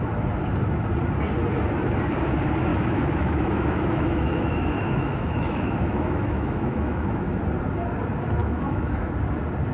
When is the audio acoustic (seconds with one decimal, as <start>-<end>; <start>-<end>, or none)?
0.0-2.7; 7.4-8.4; 9.1-9.7